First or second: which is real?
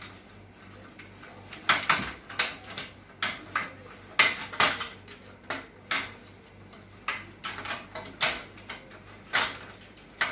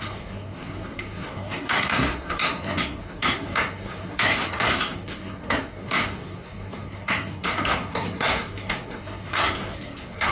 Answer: first